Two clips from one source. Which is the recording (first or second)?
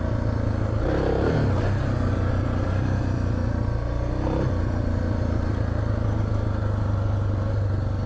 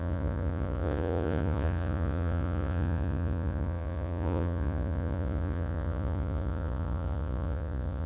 first